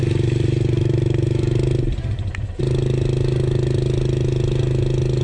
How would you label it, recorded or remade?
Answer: recorded